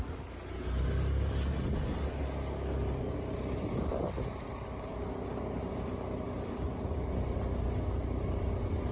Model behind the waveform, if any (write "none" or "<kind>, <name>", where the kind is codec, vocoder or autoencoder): none